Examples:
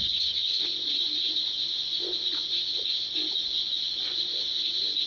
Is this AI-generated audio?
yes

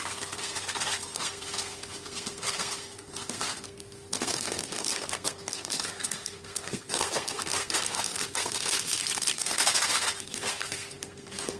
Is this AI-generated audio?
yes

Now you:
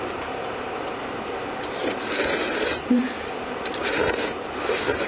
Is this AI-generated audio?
yes